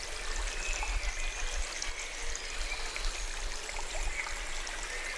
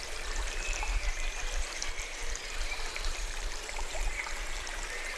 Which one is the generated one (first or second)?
second